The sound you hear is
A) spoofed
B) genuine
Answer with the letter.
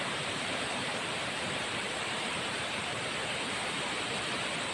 A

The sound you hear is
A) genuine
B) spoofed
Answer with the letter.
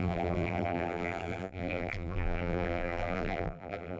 B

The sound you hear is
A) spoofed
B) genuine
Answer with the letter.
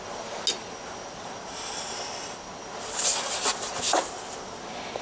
B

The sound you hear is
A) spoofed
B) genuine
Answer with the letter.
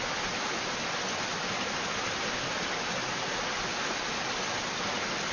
B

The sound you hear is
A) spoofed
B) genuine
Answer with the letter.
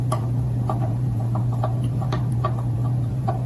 A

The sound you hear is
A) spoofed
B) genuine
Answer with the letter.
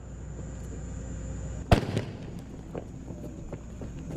B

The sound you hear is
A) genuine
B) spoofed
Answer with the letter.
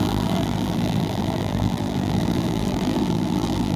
B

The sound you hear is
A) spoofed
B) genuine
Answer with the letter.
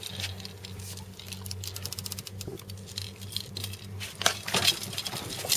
B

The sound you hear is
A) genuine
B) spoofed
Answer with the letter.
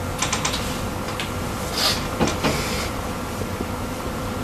A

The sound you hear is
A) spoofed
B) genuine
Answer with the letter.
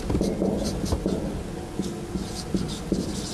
B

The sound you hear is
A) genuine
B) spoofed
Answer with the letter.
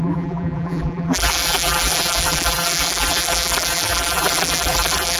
B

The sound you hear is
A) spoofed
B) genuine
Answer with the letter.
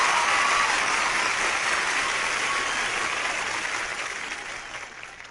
B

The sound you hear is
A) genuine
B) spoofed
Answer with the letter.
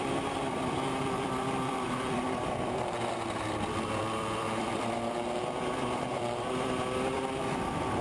B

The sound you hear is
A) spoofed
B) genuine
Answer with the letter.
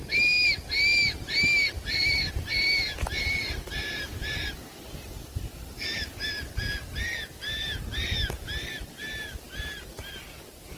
B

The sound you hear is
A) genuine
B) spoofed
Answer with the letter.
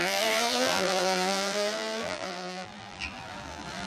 B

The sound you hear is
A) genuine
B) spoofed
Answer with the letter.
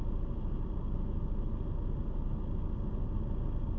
A